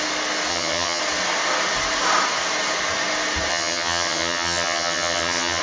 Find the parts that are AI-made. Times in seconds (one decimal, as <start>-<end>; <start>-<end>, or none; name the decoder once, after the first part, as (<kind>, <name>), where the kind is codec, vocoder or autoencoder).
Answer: 0.5-1.0 (vocoder, HiFi-GAN); 3.5-5.6

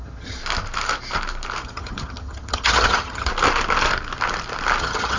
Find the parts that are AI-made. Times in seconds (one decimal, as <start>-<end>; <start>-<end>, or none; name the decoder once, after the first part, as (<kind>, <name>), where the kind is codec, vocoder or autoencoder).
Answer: 0.0-0.4 (vocoder, HiFi-GAN); 1.6-3.3; 4.8-5.2

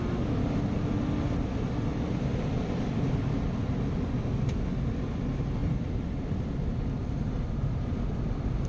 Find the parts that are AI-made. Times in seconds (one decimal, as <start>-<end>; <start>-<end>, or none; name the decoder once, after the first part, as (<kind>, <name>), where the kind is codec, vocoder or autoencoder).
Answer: 2.3-3.1 (vocoder, BigVGAN v2); 5.6-7.2

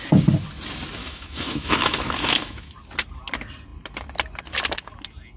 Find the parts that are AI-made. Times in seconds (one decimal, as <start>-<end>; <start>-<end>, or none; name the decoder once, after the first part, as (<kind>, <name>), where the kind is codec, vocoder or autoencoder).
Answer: 1.0-2.7 (autoencoder, DAC-VAE)

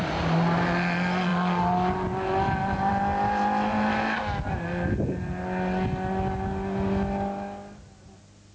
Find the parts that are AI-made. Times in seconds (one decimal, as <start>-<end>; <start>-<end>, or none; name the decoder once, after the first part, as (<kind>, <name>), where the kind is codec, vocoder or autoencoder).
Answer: none

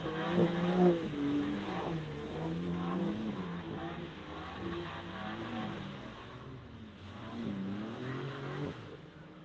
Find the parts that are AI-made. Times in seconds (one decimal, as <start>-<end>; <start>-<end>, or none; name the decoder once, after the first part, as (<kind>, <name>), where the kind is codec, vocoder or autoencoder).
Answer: 0.0-4.2 (autoencoder, DAC-VAE); 6.2-9.4